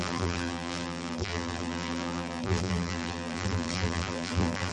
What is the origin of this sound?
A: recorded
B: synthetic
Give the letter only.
B